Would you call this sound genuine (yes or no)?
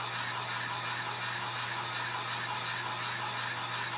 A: yes